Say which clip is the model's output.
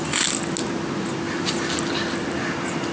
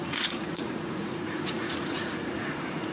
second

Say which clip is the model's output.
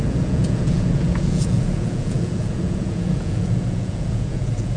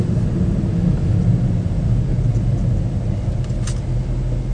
first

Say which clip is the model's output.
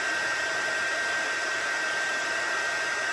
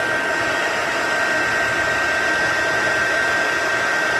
first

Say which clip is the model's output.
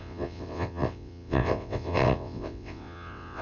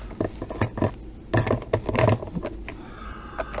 first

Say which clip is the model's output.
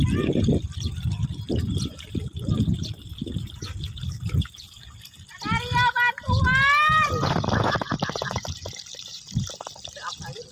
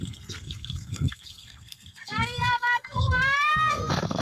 second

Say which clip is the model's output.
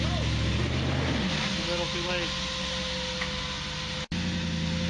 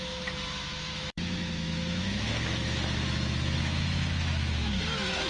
second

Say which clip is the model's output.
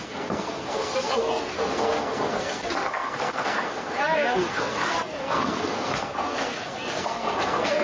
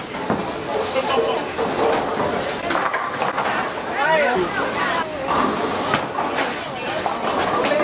first